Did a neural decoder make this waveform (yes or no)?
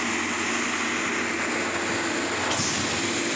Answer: no